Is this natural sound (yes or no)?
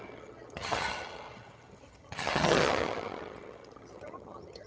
no